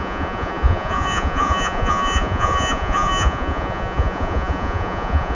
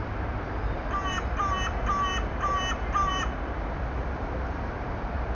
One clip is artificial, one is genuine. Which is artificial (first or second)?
first